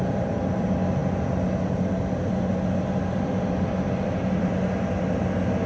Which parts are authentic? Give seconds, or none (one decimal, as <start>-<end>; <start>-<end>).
0.0-5.7